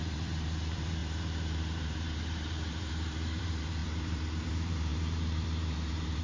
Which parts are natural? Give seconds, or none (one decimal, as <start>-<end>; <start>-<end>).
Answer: none